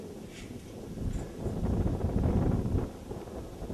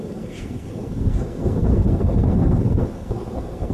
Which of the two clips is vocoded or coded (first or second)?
second